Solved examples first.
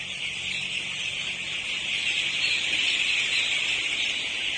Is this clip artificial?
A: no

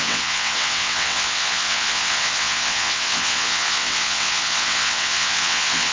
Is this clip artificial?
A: yes